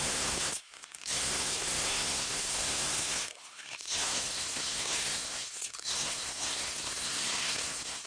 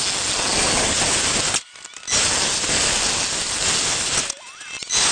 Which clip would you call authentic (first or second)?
second